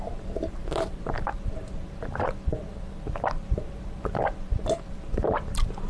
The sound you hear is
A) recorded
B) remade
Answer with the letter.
B